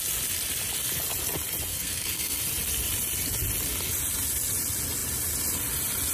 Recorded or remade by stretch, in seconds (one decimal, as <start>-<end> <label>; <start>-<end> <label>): 0.0-1.7 recorded; 1.7-2.4 remade; 2.4-6.1 recorded